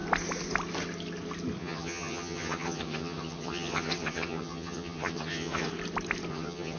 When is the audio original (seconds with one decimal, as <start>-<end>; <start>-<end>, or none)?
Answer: 0.0-1.6; 5.7-6.3